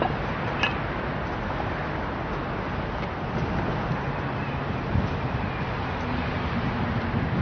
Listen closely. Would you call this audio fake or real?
real